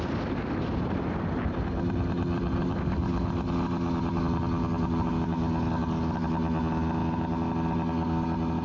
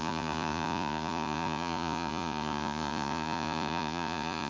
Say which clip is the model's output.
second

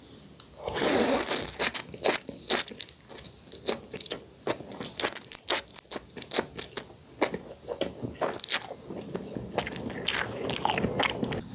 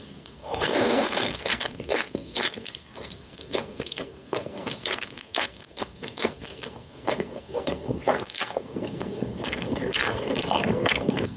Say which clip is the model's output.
second